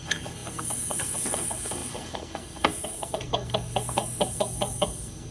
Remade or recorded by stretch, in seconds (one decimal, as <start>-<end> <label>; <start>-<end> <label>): 0.0-5.3 remade